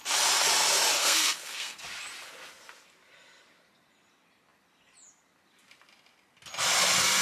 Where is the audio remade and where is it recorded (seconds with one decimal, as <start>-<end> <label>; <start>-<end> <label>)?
0.0-1.0 recorded; 1.0-1.8 remade; 1.8-7.2 recorded